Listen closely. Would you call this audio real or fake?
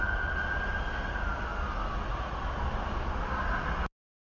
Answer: real